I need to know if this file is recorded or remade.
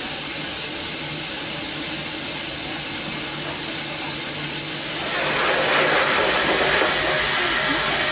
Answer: recorded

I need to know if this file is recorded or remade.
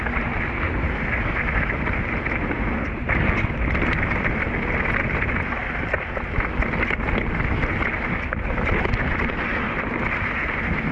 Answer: recorded